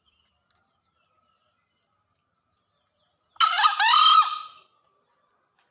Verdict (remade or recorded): recorded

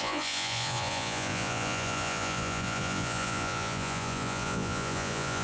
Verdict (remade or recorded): remade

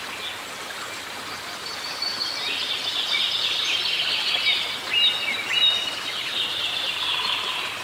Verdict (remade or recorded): recorded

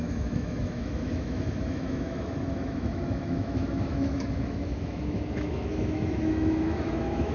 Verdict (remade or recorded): remade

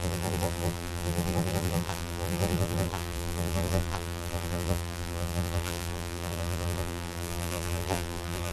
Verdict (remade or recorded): remade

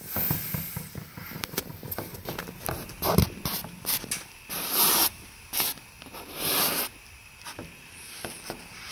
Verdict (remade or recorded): recorded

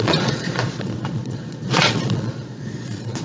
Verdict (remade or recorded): remade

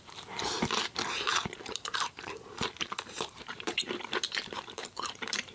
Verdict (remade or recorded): remade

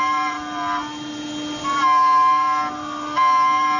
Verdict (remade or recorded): recorded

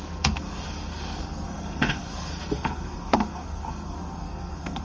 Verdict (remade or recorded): remade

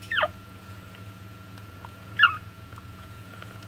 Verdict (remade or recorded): remade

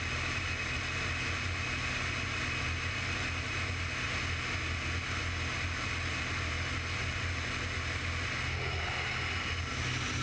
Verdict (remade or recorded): recorded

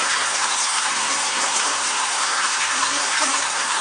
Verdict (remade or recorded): remade